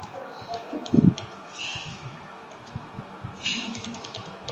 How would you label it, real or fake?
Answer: fake